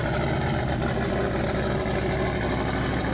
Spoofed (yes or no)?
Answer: no